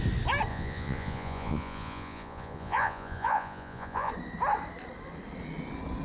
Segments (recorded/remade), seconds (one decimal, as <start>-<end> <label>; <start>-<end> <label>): 0.0-0.5 recorded; 0.5-4.1 remade; 4.1-6.0 recorded